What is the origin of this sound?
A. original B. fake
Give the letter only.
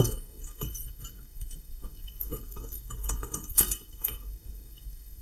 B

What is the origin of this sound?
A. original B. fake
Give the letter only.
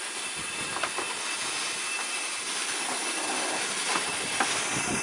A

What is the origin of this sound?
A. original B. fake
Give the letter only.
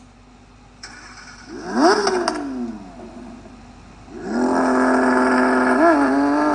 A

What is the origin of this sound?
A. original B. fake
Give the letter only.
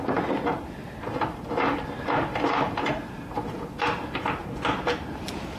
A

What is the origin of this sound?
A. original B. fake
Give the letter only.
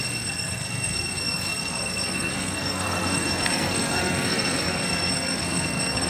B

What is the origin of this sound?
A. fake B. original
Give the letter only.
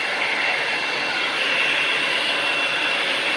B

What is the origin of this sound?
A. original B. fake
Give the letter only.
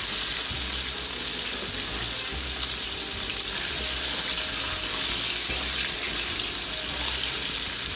A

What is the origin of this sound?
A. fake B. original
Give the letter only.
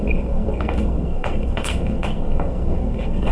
A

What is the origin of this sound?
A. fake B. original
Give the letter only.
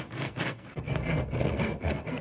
A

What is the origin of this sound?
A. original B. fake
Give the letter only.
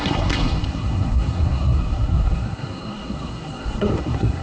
B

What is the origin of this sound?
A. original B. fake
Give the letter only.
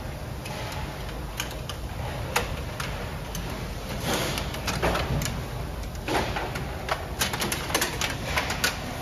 A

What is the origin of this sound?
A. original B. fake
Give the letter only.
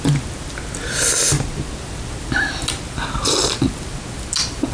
A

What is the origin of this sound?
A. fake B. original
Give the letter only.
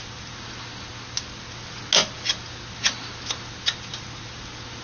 B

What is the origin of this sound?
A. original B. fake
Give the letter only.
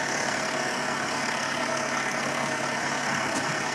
B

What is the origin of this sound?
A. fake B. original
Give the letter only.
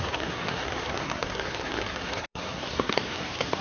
A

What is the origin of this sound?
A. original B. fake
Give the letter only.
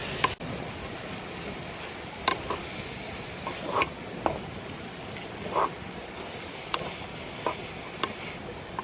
A